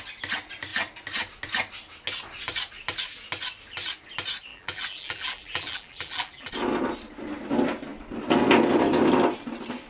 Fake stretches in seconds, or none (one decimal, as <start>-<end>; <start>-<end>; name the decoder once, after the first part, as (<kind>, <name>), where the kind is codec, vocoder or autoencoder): 4.5-6.5 (vocoder, BigVGAN v2)